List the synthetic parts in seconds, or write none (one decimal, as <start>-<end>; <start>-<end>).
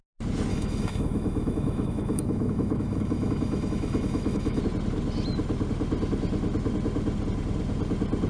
0.5-4.6